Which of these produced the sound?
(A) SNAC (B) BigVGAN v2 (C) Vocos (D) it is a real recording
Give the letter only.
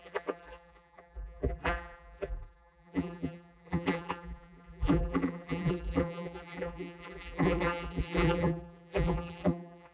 B